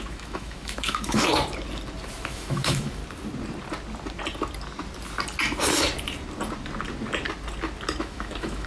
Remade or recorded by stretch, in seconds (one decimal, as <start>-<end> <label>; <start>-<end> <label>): 0.0-1.3 remade; 1.3-2.3 recorded; 2.3-3.0 remade; 3.0-8.0 recorded; 8.0-8.7 remade

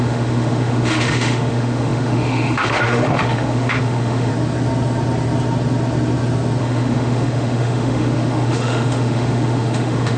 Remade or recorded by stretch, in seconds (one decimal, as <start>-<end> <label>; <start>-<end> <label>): 0.0-4.3 remade; 4.3-6.6 recorded; 6.6-10.2 remade

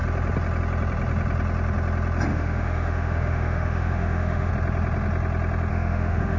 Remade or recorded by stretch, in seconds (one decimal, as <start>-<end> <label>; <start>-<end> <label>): 0.0-2.3 recorded; 2.3-4.5 remade; 4.5-5.7 recorded; 5.7-6.4 remade

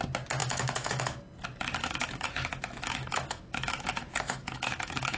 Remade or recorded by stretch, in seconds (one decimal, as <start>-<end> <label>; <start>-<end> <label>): 0.0-0.4 recorded; 0.4-1.2 remade; 1.2-1.8 recorded; 1.8-5.2 remade

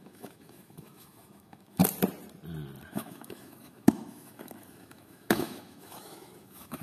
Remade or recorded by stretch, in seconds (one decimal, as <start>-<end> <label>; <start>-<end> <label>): 0.0-1.8 remade; 1.8-2.9 recorded; 2.9-6.8 remade

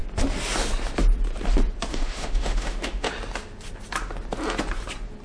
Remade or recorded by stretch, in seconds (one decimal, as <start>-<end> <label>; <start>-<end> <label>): 0.0-1.9 recorded; 1.9-3.1 remade; 3.1-5.2 recorded